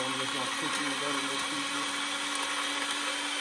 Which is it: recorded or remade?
recorded